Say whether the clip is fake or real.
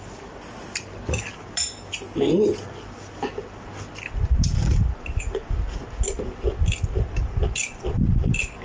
real